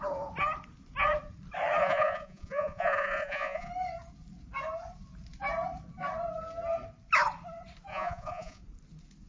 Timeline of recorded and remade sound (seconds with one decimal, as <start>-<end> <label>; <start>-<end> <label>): 0.0-1.8 recorded; 1.8-3.7 remade; 3.7-7.9 recorded; 7.9-8.6 remade; 8.6-9.3 recorded